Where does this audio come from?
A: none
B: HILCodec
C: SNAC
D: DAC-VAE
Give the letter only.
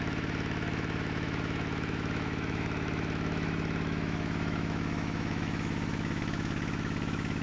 D